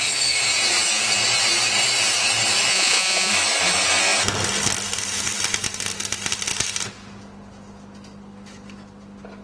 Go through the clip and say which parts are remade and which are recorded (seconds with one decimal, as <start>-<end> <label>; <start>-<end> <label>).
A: 0.0-2.7 recorded; 2.7-3.3 remade; 3.3-9.4 recorded